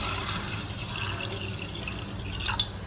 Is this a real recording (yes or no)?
yes